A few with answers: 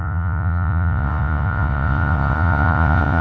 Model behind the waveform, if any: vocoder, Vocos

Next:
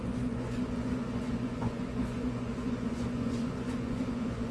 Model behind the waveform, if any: vocoder, Vocos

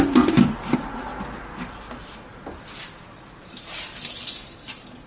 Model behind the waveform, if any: none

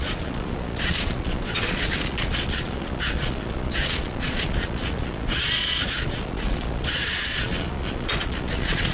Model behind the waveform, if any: vocoder, Vocos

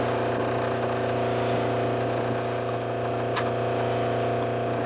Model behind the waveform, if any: none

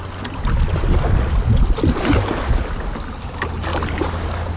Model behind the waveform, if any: none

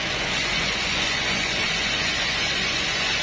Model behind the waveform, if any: vocoder, Vocos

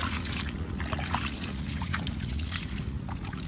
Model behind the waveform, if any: vocoder, Vocos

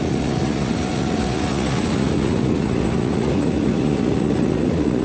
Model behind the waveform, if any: vocoder, Vocos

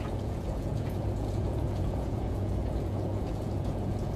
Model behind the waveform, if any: vocoder, Vocos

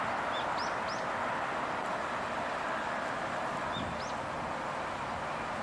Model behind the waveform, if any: none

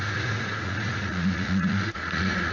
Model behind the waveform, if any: vocoder, Vocos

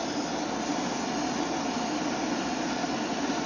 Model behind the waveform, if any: none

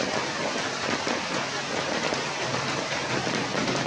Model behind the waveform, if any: none